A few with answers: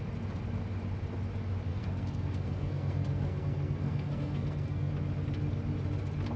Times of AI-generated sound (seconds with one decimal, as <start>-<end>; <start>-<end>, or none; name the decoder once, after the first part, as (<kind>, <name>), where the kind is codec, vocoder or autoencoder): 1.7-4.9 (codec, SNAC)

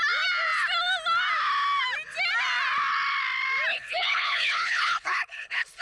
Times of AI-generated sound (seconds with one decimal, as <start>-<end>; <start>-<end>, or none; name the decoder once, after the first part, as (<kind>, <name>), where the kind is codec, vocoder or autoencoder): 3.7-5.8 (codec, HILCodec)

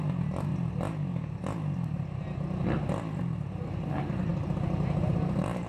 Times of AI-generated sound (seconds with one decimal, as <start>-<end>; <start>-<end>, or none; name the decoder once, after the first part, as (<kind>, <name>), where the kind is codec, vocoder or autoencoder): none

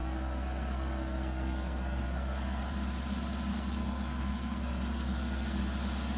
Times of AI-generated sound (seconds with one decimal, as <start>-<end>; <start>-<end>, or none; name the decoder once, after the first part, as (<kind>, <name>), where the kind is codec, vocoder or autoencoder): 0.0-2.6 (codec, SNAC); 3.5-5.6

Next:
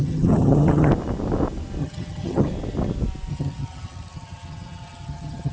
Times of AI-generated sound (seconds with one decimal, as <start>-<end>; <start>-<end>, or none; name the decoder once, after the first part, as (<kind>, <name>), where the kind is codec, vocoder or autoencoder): 0.0-0.9 (vocoder, HiFi-GAN); 1.8-2.5; 3.3-5.5